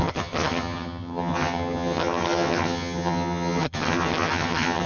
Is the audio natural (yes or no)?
no